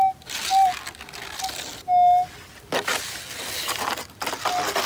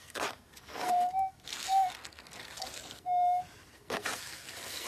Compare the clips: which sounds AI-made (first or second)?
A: second